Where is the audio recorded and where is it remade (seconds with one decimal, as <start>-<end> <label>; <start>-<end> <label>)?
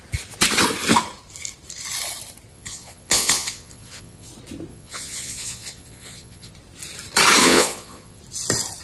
0.0-2.5 recorded; 2.5-4.3 remade; 4.3-4.7 recorded; 4.7-6.5 remade; 6.5-7.4 recorded; 7.4-8.2 remade; 8.2-8.8 recorded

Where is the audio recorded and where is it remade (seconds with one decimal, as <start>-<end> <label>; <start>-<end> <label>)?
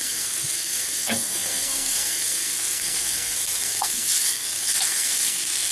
0.0-5.7 remade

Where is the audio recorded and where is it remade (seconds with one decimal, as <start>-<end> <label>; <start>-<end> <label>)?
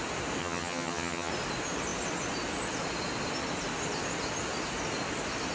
0.0-0.4 recorded; 0.4-1.3 remade; 1.3-5.5 recorded